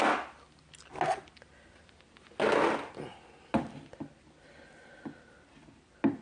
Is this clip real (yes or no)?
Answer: yes